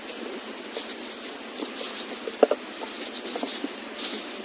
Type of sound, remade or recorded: recorded